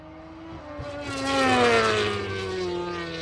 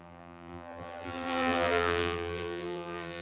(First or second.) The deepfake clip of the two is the second